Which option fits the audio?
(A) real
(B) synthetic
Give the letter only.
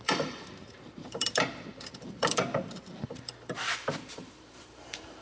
B